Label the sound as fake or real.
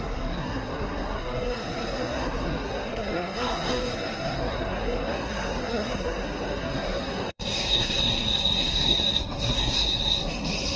fake